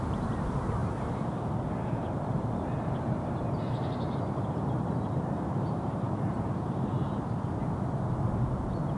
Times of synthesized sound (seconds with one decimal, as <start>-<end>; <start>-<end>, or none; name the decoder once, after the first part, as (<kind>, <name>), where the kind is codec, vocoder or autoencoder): 0.0-7.6 (vocoder, BigVGAN v2); 8.4-9.0